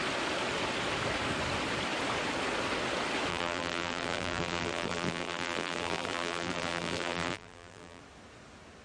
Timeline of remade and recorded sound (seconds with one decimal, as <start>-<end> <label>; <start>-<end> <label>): 0.0-3.3 recorded; 3.3-8.0 remade; 8.0-8.8 recorded